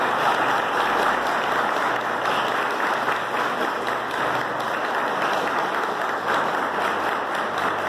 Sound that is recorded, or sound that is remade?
recorded